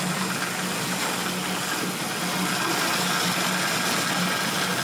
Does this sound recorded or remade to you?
recorded